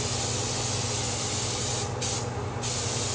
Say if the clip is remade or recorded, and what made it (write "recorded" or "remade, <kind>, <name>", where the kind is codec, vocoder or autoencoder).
recorded